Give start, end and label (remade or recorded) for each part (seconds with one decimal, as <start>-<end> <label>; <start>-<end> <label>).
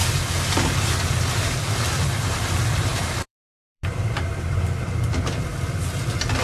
0.0-5.5 remade; 5.5-6.4 recorded